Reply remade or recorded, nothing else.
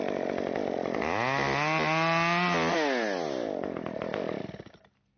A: recorded